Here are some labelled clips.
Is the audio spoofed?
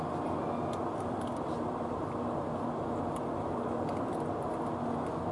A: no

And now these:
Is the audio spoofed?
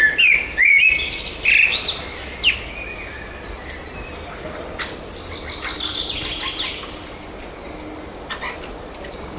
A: no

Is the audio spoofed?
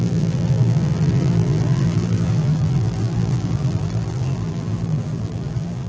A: yes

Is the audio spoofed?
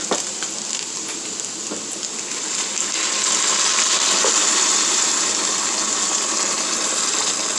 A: no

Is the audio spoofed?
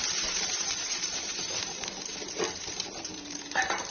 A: yes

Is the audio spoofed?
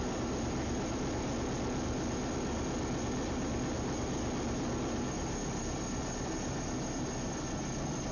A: no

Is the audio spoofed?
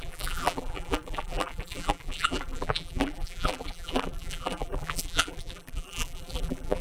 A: yes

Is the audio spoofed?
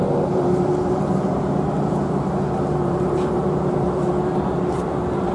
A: yes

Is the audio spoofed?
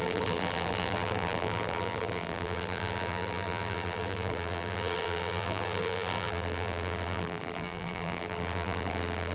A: yes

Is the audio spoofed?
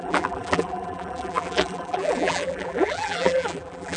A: yes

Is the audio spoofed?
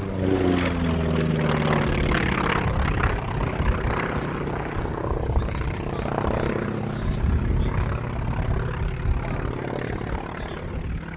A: no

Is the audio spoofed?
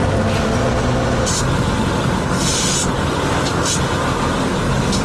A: no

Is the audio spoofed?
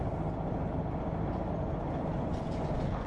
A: no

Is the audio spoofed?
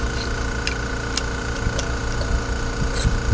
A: no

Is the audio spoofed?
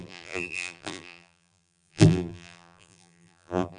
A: yes